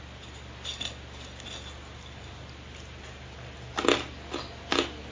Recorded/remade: recorded